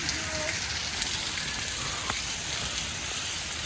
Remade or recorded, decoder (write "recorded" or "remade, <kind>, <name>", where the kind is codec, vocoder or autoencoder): recorded